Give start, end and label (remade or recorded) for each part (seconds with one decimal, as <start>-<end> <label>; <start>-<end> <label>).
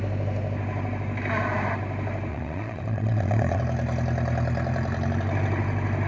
0.0-2.3 recorded; 2.3-3.6 remade; 3.6-6.1 recorded